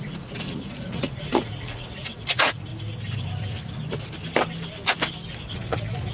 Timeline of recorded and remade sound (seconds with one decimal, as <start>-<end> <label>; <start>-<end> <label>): 0.0-2.7 remade; 2.7-5.5 recorded; 5.5-6.1 remade

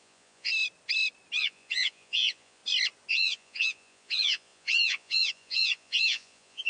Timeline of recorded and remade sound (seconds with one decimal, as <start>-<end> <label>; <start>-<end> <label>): 0.0-0.5 remade; 0.5-1.4 recorded; 1.4-2.6 remade; 2.6-3.1 recorded; 3.1-6.7 remade

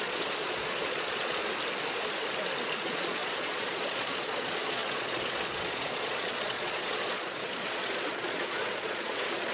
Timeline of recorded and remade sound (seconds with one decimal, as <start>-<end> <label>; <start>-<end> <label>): 0.0-1.4 remade; 1.4-2.8 recorded; 2.8-9.5 remade